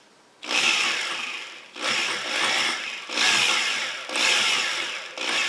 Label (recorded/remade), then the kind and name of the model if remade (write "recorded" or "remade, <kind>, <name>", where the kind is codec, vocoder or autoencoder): recorded